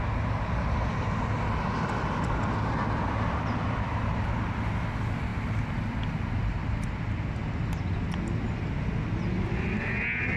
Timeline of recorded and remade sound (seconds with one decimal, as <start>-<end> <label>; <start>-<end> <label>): 0.0-10.4 recorded